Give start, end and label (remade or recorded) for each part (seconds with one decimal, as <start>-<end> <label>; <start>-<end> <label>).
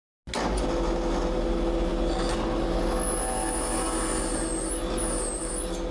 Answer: 0.0-5.9 recorded